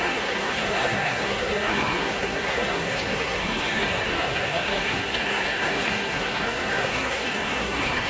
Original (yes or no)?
no